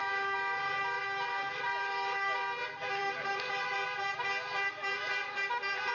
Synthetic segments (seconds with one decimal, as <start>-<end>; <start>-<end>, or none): none